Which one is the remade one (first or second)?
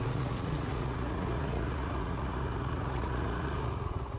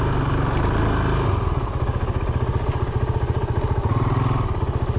first